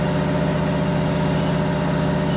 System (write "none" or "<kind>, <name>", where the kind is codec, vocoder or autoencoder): none